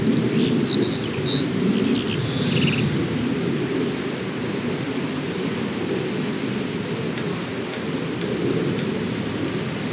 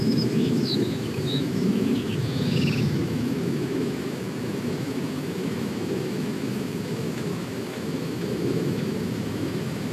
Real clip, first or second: first